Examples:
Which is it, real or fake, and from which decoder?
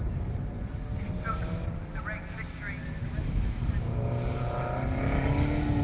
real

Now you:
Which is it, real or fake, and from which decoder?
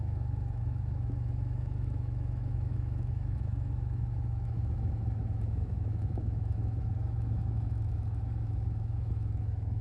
fake, autoencoder, DAC-VAE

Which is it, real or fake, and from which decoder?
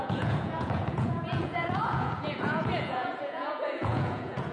fake, vocoder, Vocos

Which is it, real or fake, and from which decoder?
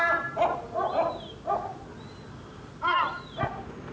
real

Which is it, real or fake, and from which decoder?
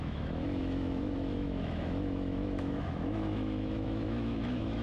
fake, autoencoder, DAC-VAE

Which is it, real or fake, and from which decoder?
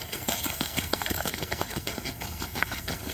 fake, codec, SNAC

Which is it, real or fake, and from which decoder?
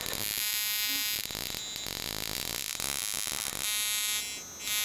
real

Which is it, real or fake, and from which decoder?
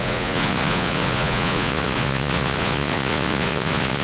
fake, vocoder, Vocos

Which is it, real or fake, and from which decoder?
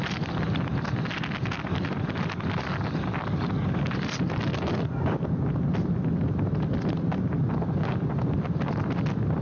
real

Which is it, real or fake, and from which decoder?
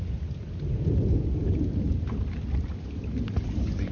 real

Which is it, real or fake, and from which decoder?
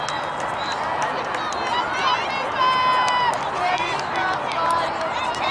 real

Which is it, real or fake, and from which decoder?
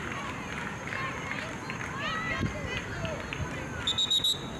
real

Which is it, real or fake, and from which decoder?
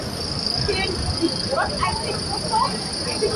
real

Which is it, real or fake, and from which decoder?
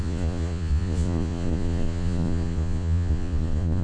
fake, vocoder, Vocos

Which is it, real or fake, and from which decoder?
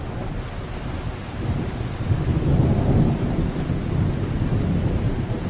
real